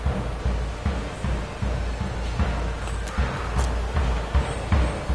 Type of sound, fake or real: real